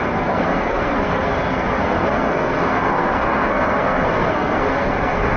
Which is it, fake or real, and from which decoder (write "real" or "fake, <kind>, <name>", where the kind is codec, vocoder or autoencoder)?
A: fake, codec, SNAC